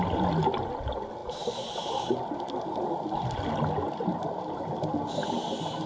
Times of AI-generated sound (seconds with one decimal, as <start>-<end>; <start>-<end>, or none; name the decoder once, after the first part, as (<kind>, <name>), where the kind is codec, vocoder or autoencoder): none